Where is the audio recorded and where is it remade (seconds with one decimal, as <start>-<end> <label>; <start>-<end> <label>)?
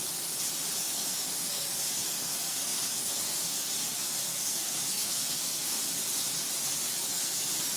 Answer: 0.0-0.8 recorded; 0.8-5.8 remade; 5.8-7.0 recorded; 7.0-7.8 remade